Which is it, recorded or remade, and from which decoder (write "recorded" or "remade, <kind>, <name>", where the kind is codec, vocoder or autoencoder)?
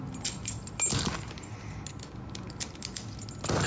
recorded